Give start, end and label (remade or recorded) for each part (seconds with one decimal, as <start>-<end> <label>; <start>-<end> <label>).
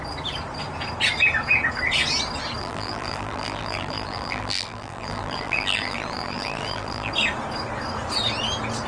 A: 0.0-2.6 recorded; 2.6-7.1 remade; 7.1-8.9 recorded